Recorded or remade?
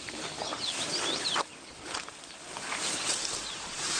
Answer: recorded